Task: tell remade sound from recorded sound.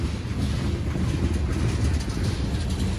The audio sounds recorded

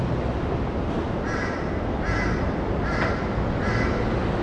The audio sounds recorded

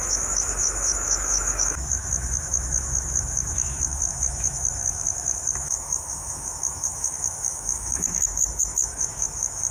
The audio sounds remade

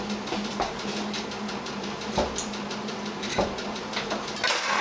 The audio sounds recorded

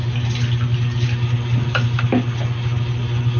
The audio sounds recorded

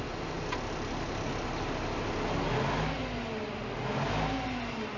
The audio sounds recorded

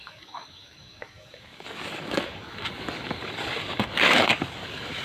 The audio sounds remade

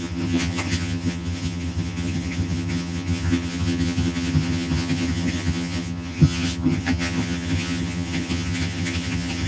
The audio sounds remade